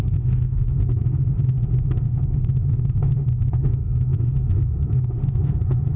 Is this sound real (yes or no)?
no